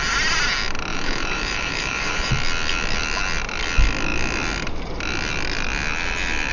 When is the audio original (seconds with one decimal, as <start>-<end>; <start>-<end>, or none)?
0.0-0.9; 2.3-6.5